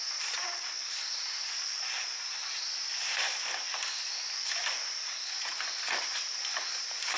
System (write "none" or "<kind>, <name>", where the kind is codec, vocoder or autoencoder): none